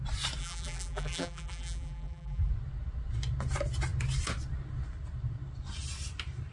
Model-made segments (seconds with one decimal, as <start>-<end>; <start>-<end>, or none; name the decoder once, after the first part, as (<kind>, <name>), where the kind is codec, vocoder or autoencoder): 0.4-2.5 (vocoder, BigVGAN v2)